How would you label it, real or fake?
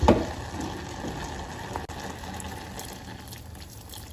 real